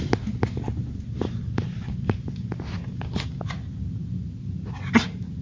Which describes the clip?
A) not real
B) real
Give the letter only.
B